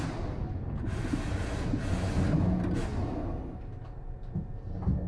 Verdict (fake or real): real